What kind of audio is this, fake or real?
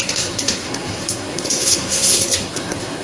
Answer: fake